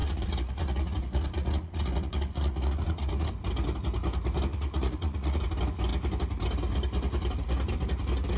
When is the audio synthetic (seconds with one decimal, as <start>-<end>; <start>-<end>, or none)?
0.0-3.3; 4.5-5.4